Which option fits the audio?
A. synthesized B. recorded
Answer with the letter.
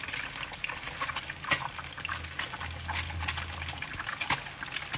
B